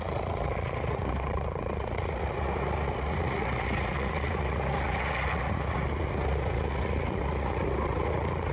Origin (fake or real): fake